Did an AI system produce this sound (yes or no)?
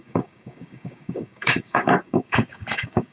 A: yes